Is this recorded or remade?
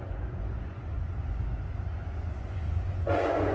remade